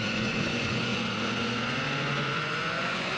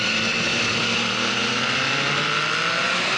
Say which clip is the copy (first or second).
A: first